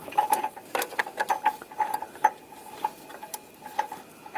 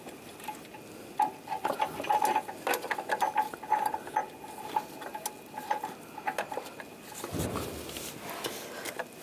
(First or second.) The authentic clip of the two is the second